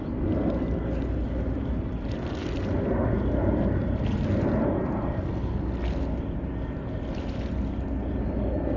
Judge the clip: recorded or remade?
recorded